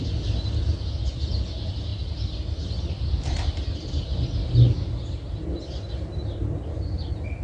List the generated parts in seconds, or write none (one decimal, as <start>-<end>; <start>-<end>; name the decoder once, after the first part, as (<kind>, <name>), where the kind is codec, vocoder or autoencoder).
none